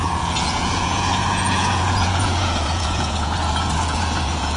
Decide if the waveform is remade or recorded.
remade